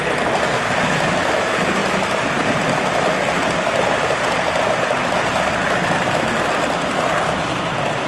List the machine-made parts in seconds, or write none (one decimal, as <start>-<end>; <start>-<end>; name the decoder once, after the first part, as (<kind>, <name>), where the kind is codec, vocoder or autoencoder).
5.0-6.2 (vocoder, BigVGAN v2)